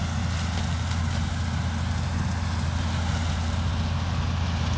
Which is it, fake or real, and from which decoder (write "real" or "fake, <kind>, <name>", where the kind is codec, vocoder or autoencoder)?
real